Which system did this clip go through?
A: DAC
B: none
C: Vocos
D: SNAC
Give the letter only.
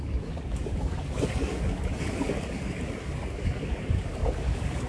A